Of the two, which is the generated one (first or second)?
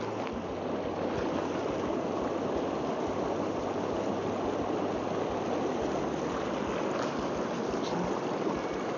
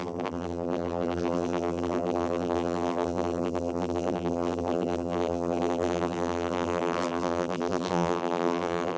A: second